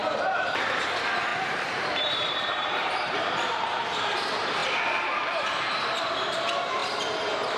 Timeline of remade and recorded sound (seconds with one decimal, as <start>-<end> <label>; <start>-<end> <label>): 0.0-6.8 remade; 6.8-7.6 recorded